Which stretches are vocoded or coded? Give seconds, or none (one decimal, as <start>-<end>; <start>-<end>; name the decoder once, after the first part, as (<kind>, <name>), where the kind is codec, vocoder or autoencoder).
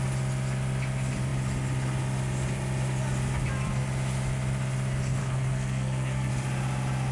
5.2-6.3 (codec, SNAC)